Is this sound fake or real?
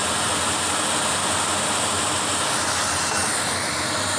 real